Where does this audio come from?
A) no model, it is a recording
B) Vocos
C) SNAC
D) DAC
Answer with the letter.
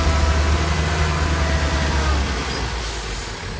A